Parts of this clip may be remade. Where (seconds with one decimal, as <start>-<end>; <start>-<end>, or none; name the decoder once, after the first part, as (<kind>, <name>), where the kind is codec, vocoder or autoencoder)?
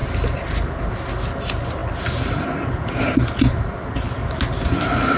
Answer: none